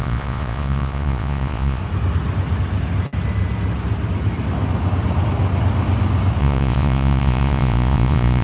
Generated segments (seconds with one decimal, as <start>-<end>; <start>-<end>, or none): 0.0-1.8; 6.4-8.4